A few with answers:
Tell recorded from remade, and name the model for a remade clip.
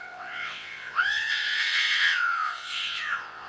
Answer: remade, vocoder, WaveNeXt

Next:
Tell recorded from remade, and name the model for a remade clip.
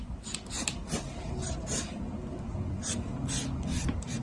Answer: recorded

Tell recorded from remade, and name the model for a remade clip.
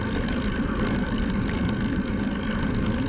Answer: recorded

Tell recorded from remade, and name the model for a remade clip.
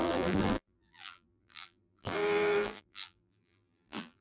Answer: remade, vocoder, BigVGAN v2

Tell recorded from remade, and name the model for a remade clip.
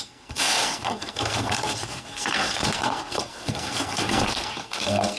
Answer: remade, codec, SNAC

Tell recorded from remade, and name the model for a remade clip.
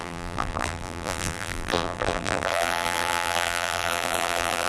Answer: remade, vocoder, BigVGAN v2